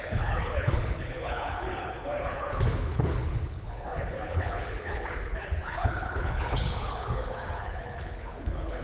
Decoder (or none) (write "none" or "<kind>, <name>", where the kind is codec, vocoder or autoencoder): codec, HILCodec